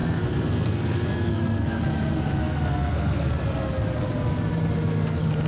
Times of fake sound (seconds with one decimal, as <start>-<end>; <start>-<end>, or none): 0.0-1.8; 2.4-3.3